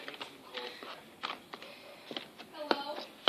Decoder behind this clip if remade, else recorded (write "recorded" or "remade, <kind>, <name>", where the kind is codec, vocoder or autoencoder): recorded